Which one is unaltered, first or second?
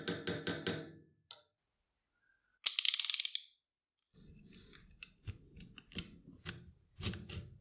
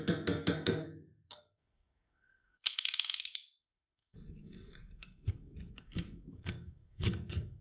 first